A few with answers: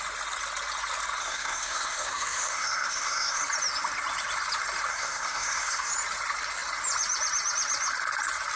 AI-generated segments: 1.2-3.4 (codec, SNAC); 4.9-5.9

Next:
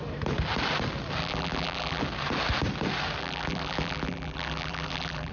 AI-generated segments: 1.2-2.0 (vocoder, BigVGAN v2); 3.2-5.3

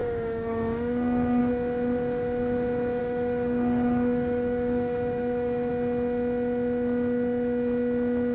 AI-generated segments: 0.0-1.4 (codec, DAC); 3.0-5.7

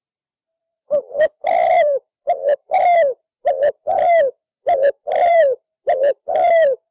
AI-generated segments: 0.7-2.8 (vocoder, BigVGAN v2); 4.4-5.4

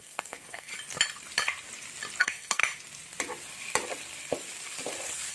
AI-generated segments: 0.0-0.7 (codec, SNAC); 2.2-2.6

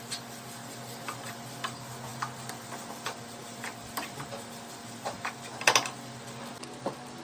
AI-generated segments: none

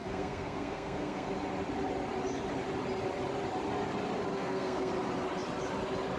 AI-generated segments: 0.0-1.3 (codec, SNAC); 4.3-4.9